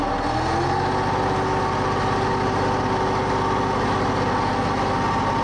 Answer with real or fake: real